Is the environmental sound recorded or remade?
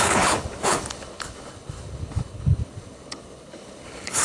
remade